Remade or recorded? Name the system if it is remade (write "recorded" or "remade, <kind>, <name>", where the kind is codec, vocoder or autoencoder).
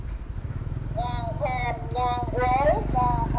recorded